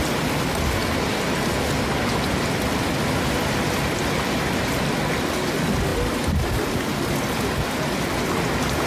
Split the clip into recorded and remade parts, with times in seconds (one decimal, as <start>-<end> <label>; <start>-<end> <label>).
0.0-8.9 recorded